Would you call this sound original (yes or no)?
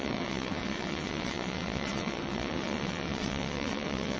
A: no